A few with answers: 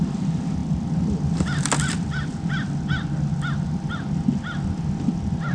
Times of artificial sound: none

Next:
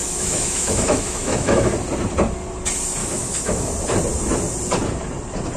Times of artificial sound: 0.0-1.7; 3.0-3.7